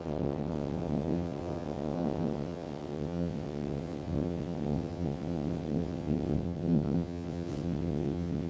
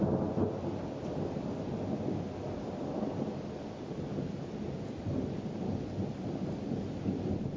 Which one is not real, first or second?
first